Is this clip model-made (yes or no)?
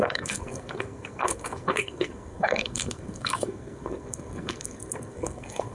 yes